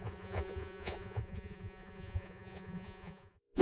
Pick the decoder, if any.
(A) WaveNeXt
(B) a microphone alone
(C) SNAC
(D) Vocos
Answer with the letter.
D